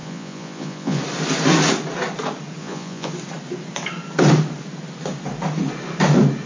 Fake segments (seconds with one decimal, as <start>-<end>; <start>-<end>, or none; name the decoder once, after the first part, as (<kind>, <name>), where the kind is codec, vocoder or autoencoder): 0.0-1.0 (vocoder, Vocos); 2.6-3.1